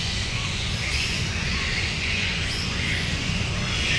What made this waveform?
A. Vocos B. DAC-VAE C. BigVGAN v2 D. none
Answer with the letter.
A